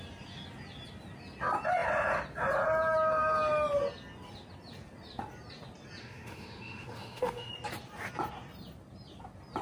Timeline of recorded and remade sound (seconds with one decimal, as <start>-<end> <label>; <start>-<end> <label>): 0.0-6.0 recorded; 6.0-7.5 remade; 7.5-9.6 recorded